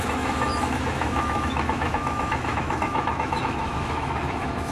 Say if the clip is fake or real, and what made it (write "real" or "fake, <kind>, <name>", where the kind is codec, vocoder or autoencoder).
fake, autoencoder, DAC-VAE